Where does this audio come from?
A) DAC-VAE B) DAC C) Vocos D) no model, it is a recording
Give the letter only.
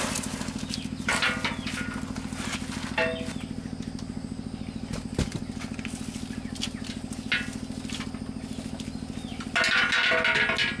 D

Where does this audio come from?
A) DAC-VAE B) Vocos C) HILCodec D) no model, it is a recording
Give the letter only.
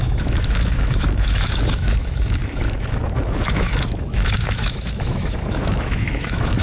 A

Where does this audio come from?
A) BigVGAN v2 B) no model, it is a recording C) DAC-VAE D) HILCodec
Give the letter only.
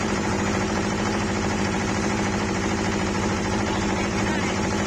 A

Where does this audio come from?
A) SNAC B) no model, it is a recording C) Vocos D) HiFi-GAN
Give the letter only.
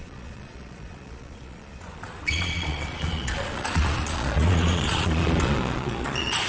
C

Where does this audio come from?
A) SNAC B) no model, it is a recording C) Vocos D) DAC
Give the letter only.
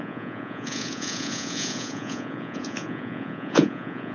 C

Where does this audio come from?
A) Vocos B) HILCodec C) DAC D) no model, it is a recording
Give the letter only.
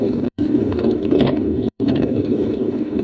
C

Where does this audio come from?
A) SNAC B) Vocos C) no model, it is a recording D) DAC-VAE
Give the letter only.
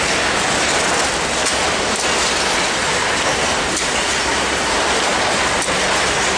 C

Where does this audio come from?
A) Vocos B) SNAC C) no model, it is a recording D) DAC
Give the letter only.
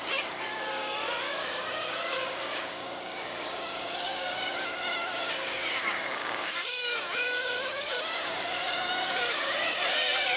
D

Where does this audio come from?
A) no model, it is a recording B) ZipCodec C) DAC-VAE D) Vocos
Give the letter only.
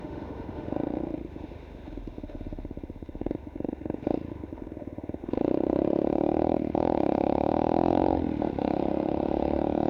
C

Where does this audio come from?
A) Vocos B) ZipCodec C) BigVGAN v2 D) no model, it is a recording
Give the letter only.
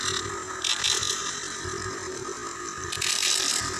C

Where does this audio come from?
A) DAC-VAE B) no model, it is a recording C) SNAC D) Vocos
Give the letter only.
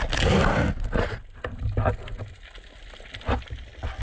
B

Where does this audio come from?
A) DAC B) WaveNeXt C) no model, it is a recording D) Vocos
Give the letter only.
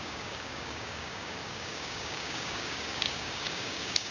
A